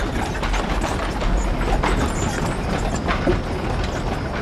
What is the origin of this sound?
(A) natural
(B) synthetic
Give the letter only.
A